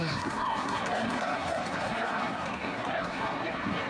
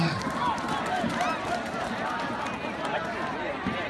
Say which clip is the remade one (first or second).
first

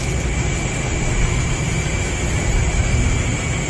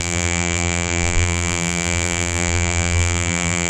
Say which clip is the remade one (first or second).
second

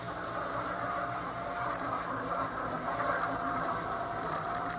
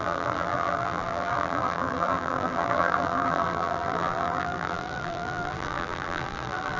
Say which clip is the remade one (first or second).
second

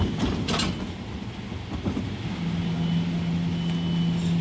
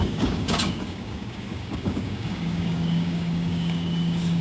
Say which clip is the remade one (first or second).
second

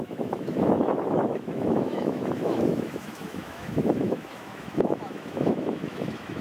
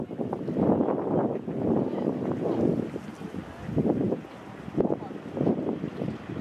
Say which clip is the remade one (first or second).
first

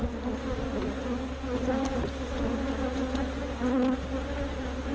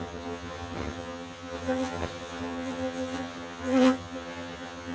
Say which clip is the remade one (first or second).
second